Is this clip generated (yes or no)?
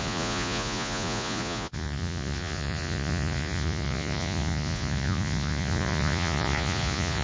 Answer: yes